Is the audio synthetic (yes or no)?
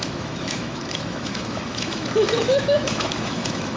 yes